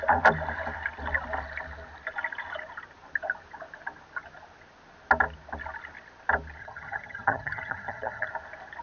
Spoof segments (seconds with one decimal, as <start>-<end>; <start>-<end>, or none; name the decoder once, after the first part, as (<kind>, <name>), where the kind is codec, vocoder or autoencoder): 6.6-8.3 (vocoder, HiFi-GAN)